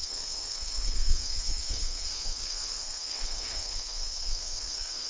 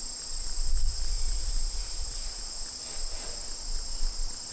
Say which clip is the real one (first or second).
second